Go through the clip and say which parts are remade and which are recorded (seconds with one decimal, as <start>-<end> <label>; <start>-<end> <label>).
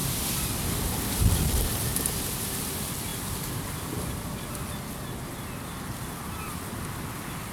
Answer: 0.0-7.5 recorded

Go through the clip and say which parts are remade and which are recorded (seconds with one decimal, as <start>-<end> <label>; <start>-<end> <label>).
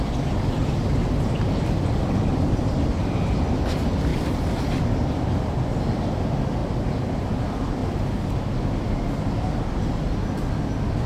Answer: 0.0-2.3 recorded; 2.3-3.0 remade; 3.0-4.1 recorded; 4.1-4.9 remade; 4.9-6.6 recorded; 6.6-7.3 remade; 7.3-11.1 recorded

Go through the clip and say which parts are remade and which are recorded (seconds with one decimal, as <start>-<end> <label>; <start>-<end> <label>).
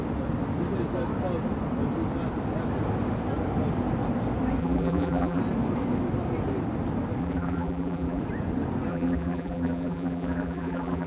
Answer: 0.0-4.6 recorded; 4.6-5.4 remade; 5.4-7.2 recorded; 7.2-8.2 remade; 8.2-8.9 recorded; 8.9-11.1 remade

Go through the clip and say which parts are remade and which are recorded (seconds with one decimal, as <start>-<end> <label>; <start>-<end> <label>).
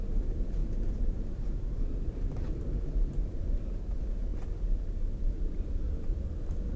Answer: 0.0-4.3 remade; 4.3-5.7 recorded; 5.7-6.8 remade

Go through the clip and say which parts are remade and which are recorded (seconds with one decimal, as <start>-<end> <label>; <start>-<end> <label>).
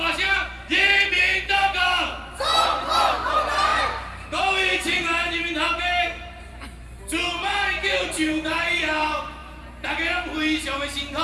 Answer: 0.0-9.4 remade; 9.4-10.2 recorded; 10.2-11.2 remade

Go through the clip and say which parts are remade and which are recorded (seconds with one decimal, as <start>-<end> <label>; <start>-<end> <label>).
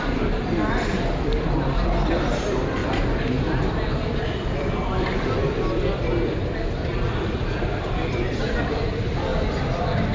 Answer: 0.0-2.8 remade; 2.8-4.2 recorded; 4.2-9.3 remade; 9.3-10.1 recorded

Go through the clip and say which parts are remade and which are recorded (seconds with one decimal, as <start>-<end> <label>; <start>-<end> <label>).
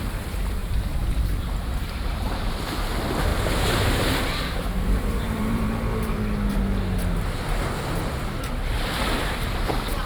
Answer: 0.0-0.6 recorded; 0.6-2.5 remade; 2.5-3.3 recorded; 3.3-5.7 remade; 5.7-10.1 recorded